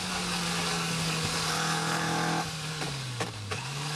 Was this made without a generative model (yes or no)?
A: no